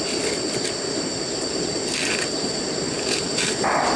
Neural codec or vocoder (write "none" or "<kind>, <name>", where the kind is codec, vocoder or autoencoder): none